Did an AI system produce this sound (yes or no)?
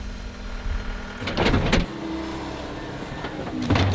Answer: no